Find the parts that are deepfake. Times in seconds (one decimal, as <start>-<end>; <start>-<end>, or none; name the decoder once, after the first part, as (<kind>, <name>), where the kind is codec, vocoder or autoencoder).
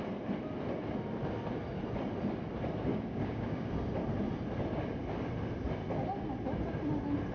2.9-3.7 (codec, DAC)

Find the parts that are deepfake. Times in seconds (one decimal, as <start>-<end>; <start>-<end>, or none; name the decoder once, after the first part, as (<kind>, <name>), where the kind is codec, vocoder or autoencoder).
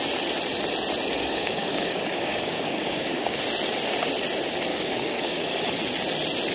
1.2-3.4 (codec, DAC); 4.7-5.7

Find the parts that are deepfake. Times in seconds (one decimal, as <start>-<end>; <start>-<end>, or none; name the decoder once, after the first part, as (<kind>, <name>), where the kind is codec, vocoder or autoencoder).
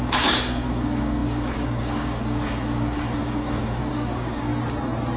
0.0-4.5 (codec, DAC)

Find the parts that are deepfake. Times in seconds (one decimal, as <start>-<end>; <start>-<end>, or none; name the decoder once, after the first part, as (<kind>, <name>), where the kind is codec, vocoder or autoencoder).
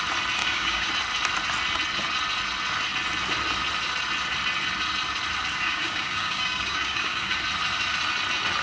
0.4-0.9 (codec, DAC); 5.5-7.4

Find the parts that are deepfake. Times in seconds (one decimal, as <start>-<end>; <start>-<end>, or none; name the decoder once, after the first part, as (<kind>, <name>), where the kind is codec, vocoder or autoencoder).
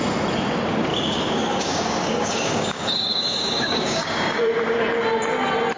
0.9-4.4 (codec, DAC)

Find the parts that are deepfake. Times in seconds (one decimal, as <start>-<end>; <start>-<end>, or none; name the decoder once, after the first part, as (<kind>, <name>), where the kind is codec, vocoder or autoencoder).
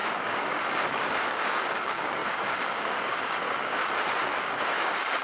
0.0-3.8 (codec, DAC); 4.4-5.2